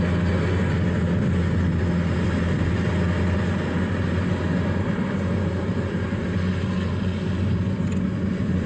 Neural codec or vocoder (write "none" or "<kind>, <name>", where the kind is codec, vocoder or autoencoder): none